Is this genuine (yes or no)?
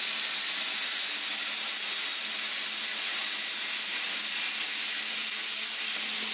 yes